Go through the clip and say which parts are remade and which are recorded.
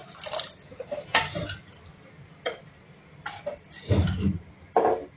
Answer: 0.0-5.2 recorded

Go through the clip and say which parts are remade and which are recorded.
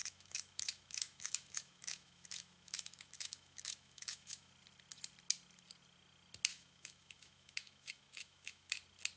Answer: 0.0-4.5 remade; 4.5-6.5 recorded; 6.5-8.7 remade; 8.7-9.2 recorded